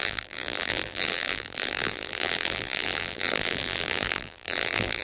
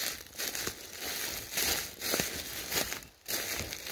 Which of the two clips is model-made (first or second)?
first